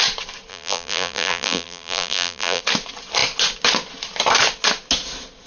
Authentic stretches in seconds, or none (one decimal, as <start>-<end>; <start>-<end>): 0.0-0.5; 2.6-5.5